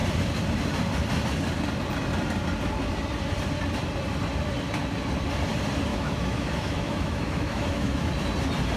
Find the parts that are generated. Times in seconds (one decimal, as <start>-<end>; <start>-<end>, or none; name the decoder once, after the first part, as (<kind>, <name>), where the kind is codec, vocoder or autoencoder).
5.9-8.1 (autoencoder, DAC-VAE)